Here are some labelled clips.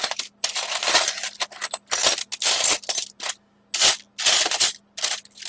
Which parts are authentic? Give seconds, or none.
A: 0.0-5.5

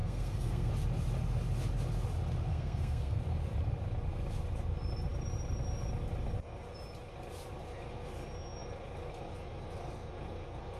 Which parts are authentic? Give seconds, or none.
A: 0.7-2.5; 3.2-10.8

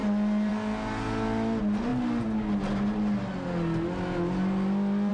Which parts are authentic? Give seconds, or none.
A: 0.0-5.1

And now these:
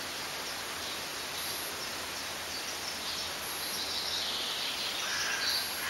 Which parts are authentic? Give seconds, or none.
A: 0.0-5.9